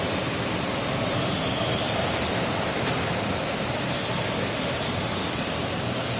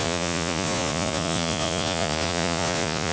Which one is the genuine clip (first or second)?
first